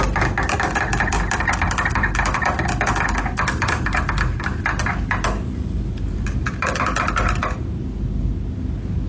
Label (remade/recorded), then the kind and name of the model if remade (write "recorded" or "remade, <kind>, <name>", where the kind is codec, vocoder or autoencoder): recorded